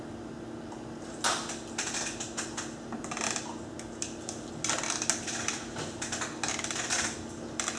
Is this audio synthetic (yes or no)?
no